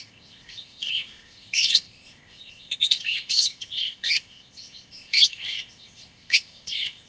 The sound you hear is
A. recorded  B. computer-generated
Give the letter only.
B